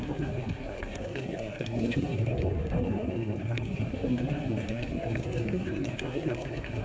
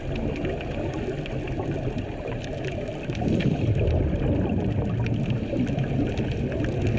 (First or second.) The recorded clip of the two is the second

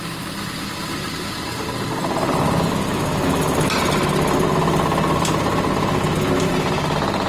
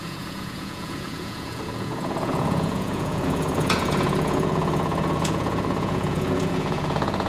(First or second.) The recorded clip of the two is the first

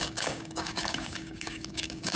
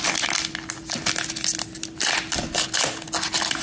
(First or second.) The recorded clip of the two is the second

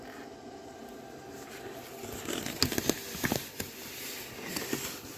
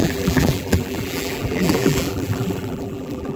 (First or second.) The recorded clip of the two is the first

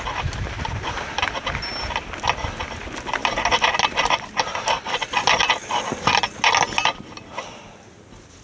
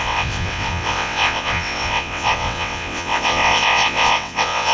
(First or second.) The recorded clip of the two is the first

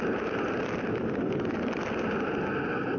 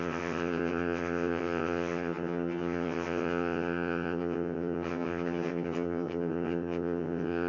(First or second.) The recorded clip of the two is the first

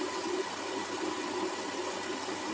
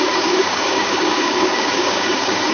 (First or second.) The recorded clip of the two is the first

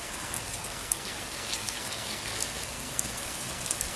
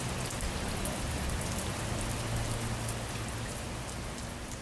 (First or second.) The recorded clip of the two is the second